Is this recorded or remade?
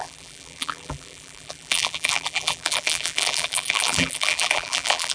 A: remade